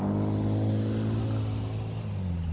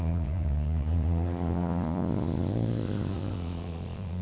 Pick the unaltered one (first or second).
first